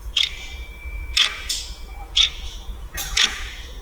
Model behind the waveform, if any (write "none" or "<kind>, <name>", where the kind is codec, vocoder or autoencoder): vocoder, Vocos